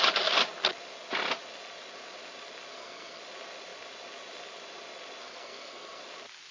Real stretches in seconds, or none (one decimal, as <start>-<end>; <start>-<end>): 0.0-2.7; 3.2-5.2; 6.0-6.5